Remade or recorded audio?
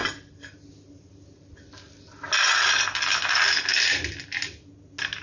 recorded